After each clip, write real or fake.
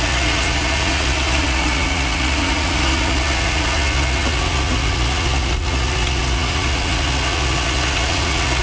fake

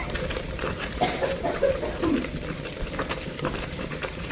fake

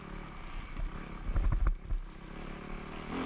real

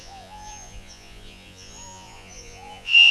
fake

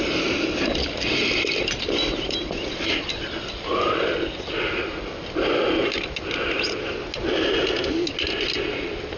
real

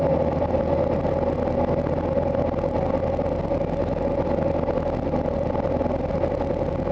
real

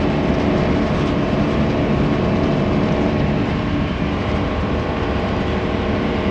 real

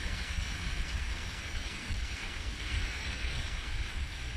fake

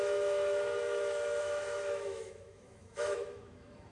fake